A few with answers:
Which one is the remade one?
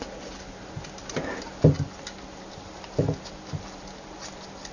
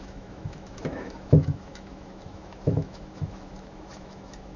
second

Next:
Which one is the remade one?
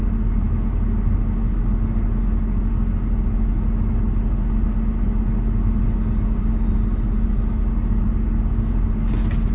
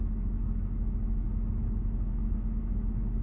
second